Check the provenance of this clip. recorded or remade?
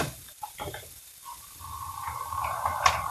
remade